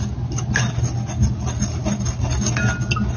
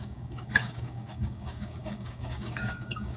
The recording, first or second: first